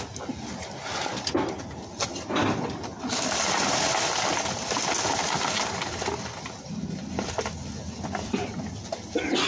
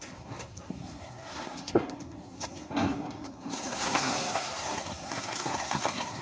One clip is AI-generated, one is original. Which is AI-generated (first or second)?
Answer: second